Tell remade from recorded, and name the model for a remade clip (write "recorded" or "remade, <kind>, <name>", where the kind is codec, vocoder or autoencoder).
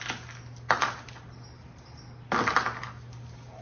recorded